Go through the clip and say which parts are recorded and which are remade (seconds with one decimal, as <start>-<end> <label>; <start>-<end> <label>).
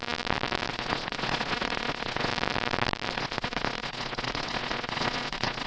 0.0-0.7 recorded; 0.7-2.3 remade; 2.3-3.1 recorded; 3.1-5.7 remade